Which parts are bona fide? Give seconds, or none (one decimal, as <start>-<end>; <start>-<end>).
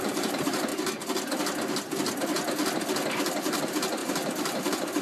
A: 0.7-3.4; 4.0-4.6